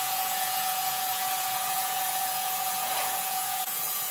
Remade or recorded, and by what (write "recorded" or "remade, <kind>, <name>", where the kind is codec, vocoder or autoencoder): remade, vocoder, Vocos